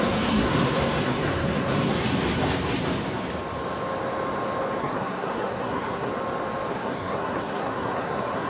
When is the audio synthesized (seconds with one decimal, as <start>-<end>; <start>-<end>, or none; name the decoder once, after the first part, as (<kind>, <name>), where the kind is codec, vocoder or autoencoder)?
0.0-2.0 (codec, SNAC); 4.8-6.1; 6.7-8.5